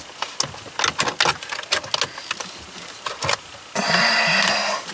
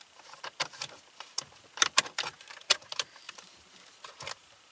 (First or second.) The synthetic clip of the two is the second